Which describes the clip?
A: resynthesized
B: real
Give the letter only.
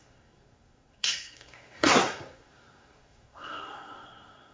A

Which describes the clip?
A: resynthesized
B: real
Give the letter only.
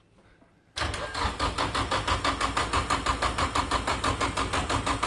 B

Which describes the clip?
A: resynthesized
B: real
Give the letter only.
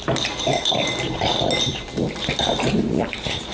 B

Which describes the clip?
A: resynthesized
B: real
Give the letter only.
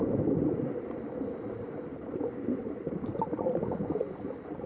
B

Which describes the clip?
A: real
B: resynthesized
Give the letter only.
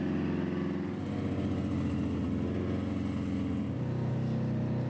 A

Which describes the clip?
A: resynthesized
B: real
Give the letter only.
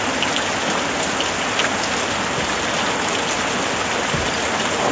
B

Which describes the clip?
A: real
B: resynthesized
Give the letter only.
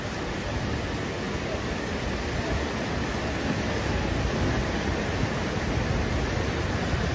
A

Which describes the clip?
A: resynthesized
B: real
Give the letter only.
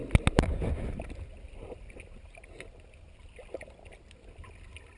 B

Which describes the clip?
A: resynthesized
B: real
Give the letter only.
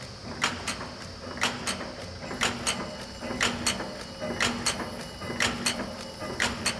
B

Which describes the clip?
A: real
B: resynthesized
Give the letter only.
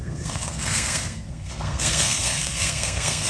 B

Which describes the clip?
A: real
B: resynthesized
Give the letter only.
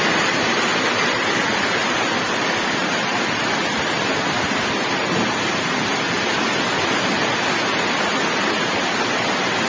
A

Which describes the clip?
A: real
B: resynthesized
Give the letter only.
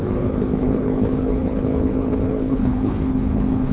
B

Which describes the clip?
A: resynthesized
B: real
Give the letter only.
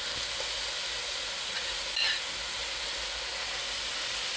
B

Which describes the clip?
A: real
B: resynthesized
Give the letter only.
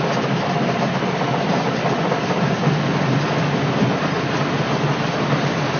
A